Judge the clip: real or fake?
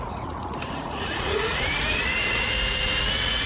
fake